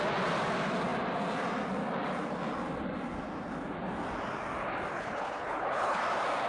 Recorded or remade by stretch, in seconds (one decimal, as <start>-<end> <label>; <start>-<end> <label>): 0.0-4.9 recorded; 4.9-6.0 remade; 6.0-6.5 recorded